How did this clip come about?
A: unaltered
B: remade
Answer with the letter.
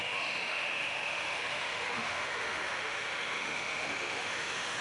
B